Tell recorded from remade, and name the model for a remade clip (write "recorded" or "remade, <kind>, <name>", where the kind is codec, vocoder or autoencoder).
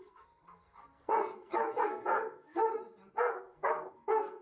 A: remade, codec, SNAC